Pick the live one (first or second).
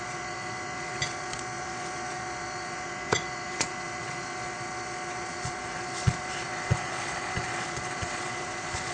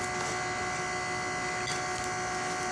second